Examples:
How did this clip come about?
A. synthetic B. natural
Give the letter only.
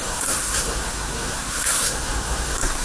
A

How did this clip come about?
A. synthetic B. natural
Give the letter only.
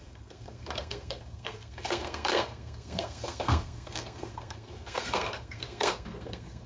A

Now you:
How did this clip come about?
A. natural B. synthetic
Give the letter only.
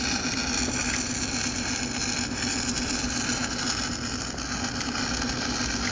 A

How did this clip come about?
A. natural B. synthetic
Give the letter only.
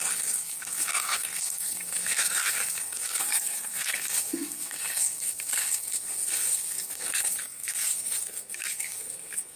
B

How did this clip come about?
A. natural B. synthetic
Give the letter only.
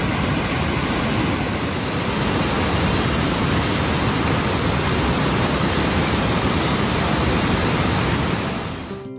A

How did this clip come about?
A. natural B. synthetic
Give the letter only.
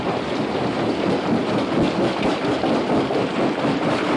A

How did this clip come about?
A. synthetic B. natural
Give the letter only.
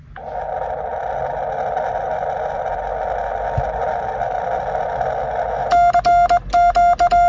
B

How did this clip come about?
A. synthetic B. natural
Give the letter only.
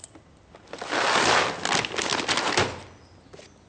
B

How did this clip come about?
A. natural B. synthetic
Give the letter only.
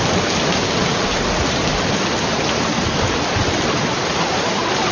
A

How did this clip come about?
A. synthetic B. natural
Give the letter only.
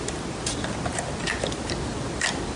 B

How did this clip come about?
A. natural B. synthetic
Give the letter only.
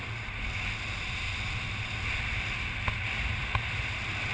A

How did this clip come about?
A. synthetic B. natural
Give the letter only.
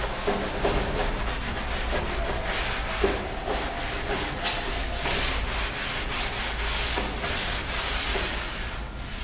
B